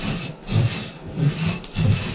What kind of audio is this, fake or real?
real